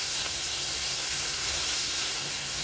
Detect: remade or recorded remade